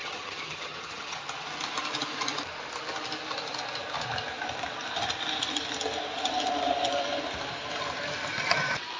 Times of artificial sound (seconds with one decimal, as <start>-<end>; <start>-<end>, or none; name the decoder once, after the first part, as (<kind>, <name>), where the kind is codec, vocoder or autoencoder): 0.0-1.2 (vocoder, HiFi-GAN)